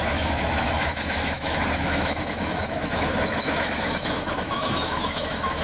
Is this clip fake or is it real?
fake